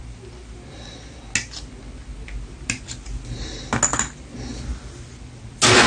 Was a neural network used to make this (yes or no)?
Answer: no